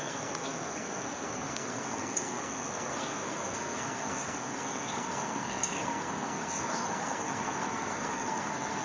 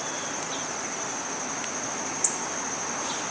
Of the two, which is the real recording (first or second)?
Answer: second